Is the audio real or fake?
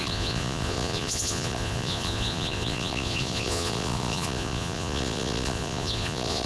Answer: fake